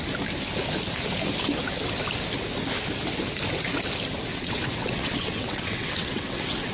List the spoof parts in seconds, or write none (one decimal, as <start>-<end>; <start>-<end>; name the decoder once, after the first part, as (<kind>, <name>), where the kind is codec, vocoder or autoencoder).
4.3-6.7 (vocoder, WaveNeXt)